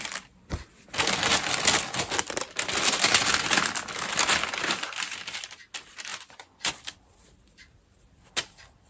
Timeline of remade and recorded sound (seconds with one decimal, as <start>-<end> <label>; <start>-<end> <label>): 0.0-6.1 recorded; 6.1-6.7 remade; 6.7-8.9 recorded